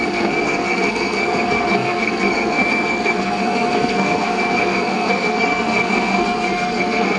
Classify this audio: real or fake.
fake